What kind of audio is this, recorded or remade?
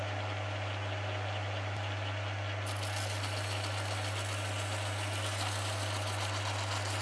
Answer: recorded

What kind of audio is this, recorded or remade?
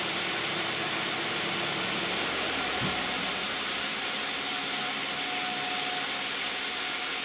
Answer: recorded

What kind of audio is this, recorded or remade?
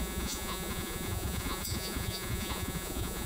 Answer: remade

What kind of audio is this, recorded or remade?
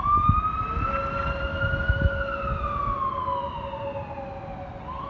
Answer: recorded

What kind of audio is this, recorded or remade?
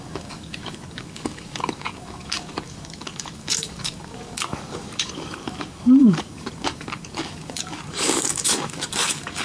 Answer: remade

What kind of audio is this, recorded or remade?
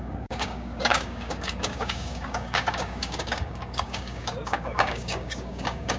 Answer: remade